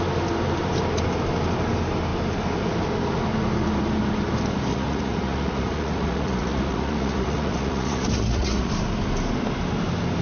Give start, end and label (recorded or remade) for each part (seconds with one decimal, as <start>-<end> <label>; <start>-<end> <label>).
0.0-4.7 recorded; 4.7-8.7 remade; 8.7-10.2 recorded